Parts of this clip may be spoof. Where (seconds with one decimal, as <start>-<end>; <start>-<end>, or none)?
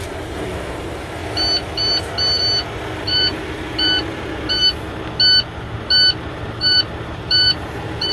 0.0-1.2; 3.0-3.4; 6.3-8.1